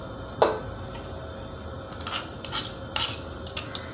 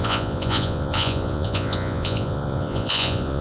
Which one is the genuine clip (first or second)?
first